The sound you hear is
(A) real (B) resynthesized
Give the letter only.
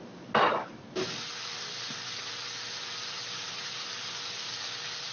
A